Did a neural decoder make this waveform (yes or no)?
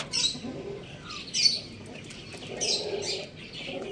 no